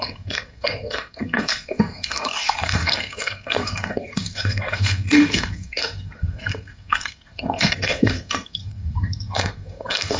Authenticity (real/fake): fake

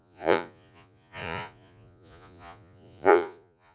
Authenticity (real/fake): fake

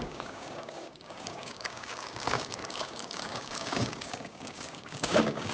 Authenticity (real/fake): fake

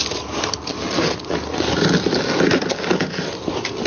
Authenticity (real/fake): real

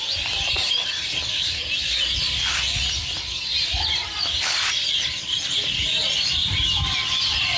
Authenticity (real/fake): real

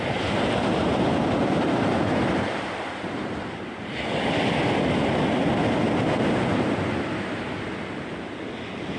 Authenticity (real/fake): real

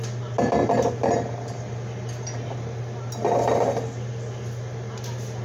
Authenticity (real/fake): real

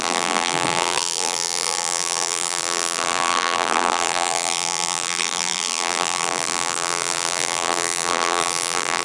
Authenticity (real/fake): fake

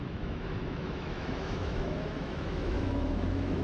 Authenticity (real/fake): fake